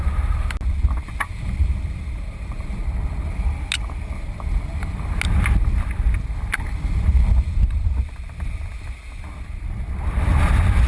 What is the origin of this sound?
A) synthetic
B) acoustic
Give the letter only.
B